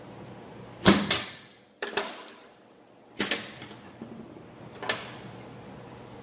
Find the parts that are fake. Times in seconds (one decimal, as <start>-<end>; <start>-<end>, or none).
1.5-2.5